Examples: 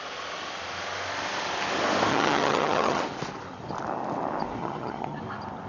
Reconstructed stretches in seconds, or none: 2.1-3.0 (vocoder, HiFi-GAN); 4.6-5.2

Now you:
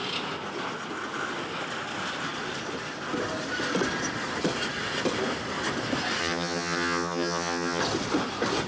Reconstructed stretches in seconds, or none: 6.2-7.8 (vocoder, HiFi-GAN)

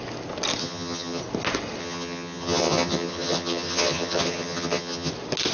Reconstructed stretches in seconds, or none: 0.6-1.2 (vocoder, HiFi-GAN); 1.8-5.1

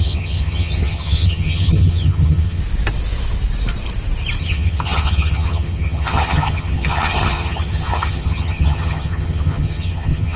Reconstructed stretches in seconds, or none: 0.0-2.6 (vocoder, HiFi-GAN); 4.4-10.4

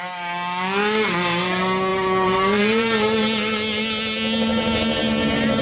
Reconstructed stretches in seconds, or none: none

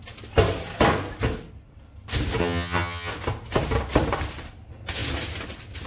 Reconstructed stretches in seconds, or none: 2.4-3.1 (vocoder, HiFi-GAN)